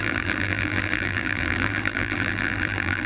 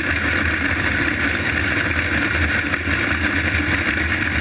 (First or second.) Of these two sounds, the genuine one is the second